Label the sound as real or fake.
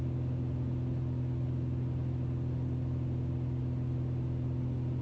real